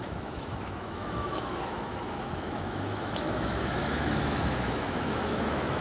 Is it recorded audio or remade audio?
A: remade